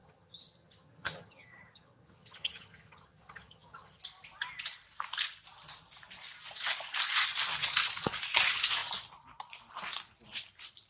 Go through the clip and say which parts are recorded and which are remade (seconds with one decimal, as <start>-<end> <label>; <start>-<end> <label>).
0.0-4.0 remade; 4.0-10.9 recorded